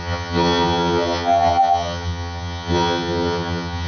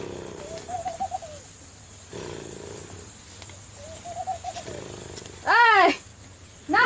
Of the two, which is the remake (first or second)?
first